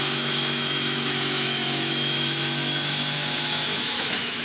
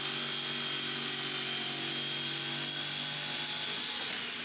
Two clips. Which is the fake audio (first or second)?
first